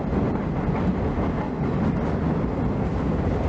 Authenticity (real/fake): real